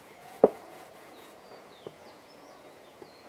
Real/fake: fake